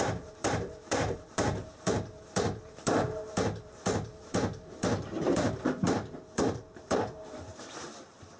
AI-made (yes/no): yes